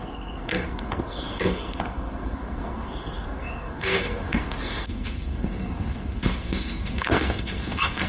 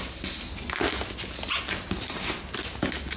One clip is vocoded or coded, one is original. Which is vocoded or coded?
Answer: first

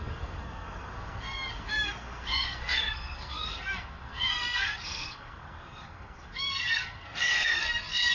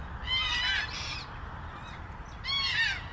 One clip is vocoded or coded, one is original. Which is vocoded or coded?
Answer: first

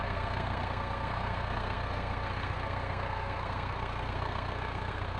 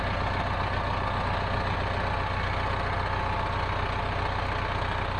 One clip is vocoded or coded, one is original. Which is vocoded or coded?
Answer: first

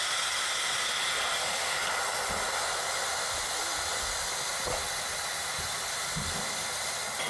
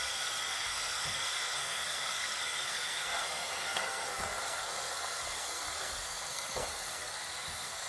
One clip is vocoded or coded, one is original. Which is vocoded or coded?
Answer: second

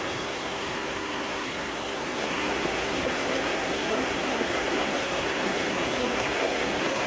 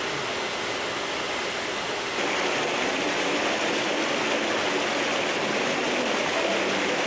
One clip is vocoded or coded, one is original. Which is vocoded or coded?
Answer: first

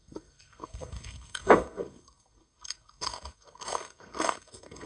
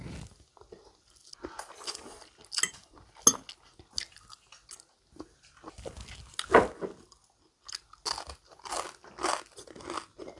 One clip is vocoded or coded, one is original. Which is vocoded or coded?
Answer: first